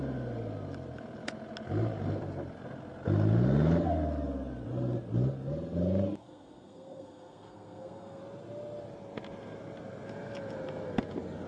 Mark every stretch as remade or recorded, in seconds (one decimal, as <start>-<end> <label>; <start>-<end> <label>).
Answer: 0.0-6.2 recorded; 6.2-8.2 remade; 8.2-11.5 recorded